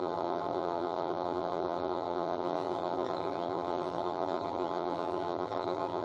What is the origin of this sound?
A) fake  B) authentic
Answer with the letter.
A